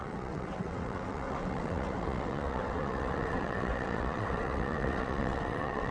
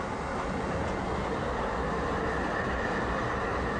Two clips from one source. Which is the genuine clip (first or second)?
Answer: second